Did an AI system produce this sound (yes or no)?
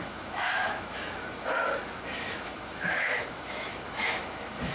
yes